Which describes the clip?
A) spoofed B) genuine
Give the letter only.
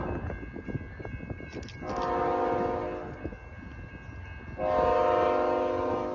B